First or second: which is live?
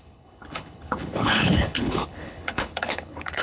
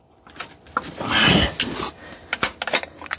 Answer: second